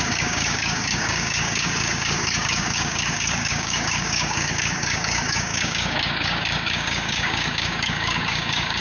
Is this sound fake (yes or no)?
yes